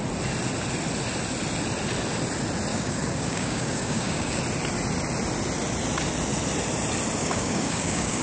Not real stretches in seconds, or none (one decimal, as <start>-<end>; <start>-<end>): 2.7-4.4; 7.2-8.2